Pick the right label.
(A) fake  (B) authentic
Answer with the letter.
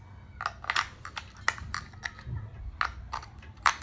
B